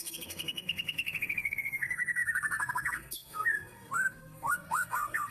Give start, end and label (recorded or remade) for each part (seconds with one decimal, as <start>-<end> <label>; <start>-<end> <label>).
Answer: 0.0-5.3 remade